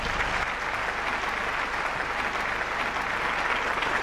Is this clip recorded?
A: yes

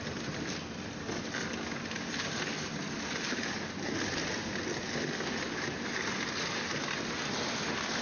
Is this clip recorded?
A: yes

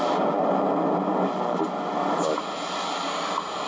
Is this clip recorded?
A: yes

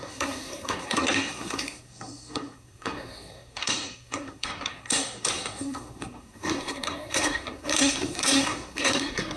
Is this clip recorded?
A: no